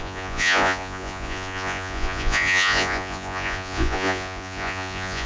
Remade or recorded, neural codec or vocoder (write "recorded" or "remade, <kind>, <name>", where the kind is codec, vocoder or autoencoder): remade, vocoder, Vocos